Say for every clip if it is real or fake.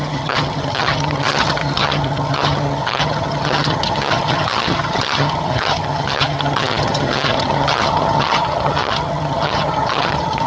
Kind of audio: fake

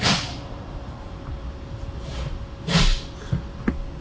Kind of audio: real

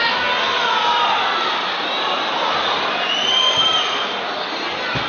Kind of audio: real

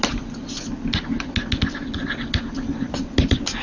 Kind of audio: real